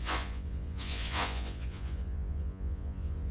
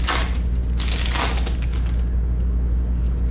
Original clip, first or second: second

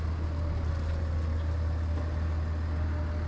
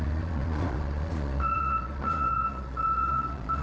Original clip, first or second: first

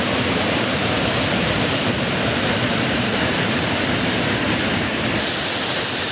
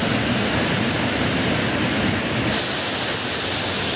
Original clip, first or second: second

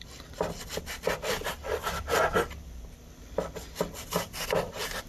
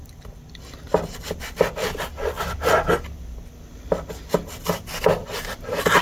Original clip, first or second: second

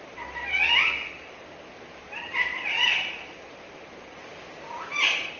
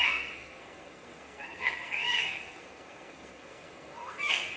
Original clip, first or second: first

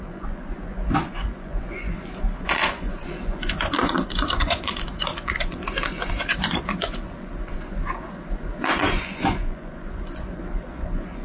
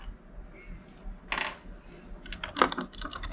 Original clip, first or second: second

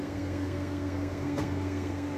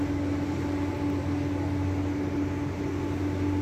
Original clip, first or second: second